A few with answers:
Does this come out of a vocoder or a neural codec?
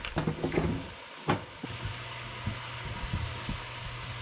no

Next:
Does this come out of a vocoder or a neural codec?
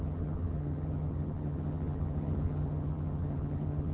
yes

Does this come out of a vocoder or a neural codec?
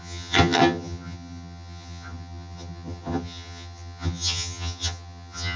yes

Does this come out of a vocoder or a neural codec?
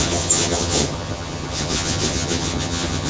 yes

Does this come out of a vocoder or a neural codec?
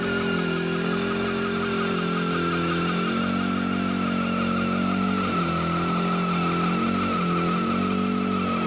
no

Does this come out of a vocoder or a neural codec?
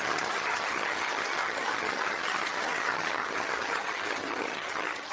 yes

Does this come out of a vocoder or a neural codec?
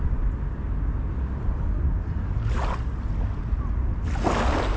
no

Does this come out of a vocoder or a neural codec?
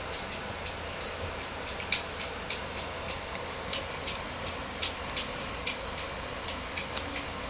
no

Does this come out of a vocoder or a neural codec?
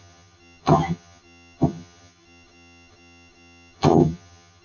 yes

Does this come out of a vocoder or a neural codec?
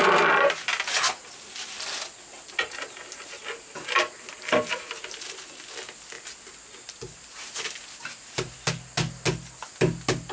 no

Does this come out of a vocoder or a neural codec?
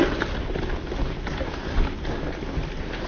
no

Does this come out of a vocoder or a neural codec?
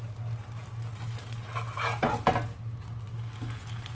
no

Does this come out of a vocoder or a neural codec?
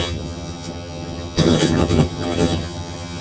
yes